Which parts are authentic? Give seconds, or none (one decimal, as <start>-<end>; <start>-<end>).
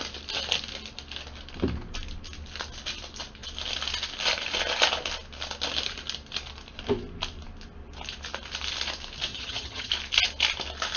0.0-9.3; 9.9-11.0